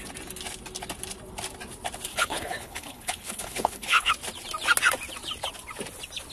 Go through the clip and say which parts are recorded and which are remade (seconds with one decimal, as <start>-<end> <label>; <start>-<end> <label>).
0.0-2.1 recorded; 2.1-4.1 remade; 4.1-6.3 recorded